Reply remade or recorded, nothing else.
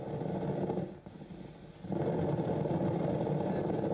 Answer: recorded